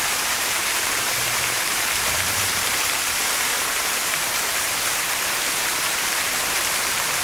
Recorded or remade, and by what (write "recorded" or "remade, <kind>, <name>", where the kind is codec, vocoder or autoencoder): remade, vocoder, BigVGAN v2